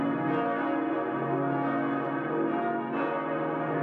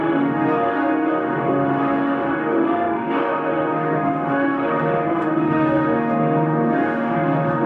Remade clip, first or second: second